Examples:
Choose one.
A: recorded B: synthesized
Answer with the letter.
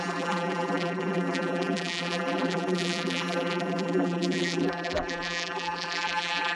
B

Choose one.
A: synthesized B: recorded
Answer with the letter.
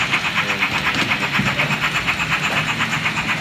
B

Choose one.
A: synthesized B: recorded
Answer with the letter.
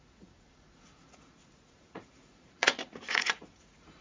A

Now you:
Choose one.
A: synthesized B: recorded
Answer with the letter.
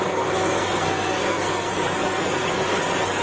A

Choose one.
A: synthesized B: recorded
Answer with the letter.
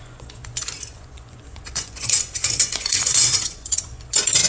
A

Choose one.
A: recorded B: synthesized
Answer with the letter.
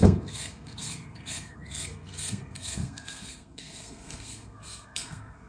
B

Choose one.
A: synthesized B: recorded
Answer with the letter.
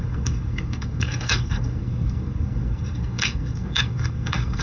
A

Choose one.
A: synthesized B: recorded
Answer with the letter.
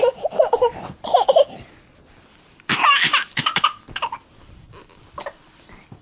A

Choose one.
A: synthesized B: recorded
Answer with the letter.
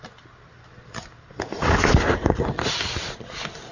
B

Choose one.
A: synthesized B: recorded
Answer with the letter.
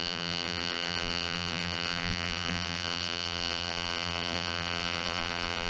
A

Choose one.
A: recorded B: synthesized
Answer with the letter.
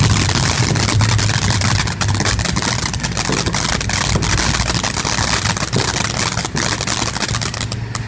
A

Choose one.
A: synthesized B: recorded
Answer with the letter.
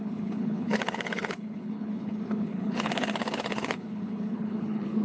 A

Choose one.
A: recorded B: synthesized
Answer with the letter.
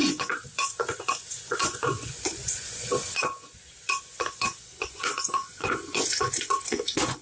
B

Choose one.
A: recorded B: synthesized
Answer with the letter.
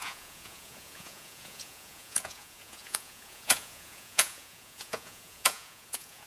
B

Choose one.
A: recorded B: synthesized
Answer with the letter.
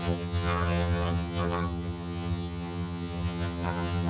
B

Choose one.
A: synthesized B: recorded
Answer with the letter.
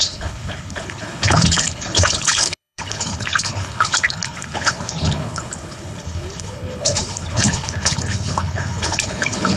A